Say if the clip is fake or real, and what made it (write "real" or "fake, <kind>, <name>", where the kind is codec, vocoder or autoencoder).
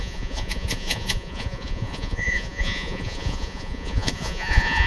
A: fake, vocoder, Vocos